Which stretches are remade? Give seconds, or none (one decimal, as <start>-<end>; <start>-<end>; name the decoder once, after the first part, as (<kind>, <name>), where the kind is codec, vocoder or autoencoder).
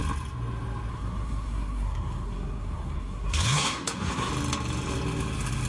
0.9-4.3 (codec, SNAC)